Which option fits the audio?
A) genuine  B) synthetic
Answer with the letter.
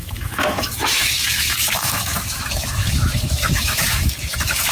B